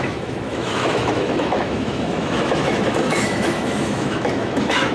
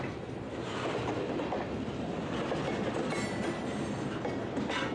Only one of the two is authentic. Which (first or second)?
second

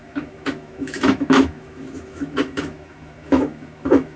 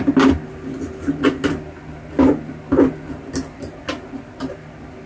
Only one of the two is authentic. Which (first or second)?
second